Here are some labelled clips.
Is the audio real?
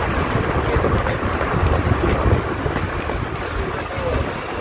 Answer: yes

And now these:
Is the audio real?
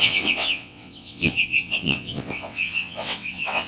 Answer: no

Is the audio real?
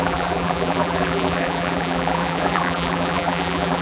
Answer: no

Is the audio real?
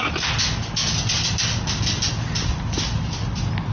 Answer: yes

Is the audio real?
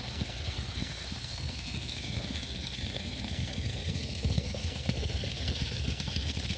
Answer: no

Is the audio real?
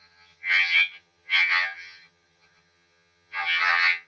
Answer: no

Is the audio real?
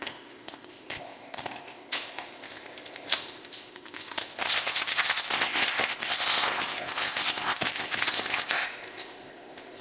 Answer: no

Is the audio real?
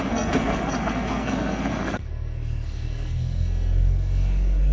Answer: no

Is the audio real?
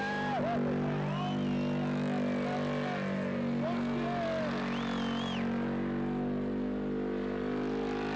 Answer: yes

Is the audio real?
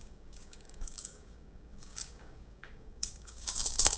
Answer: no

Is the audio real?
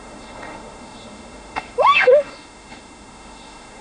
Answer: no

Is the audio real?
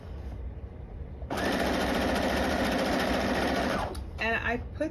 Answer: yes